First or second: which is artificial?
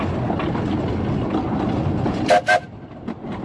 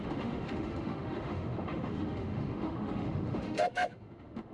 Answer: second